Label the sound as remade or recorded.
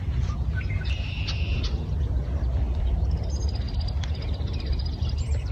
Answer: recorded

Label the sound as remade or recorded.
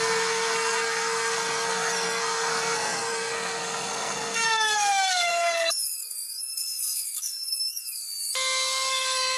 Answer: remade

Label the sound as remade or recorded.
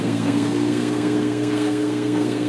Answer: remade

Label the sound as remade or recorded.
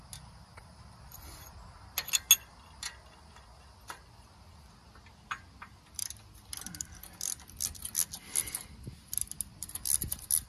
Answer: recorded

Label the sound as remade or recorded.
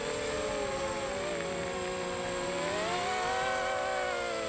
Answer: recorded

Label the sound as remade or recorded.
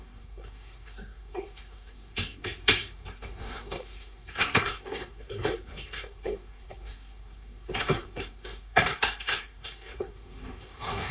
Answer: remade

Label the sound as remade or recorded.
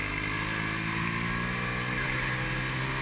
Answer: recorded